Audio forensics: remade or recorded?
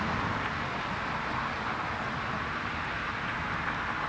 recorded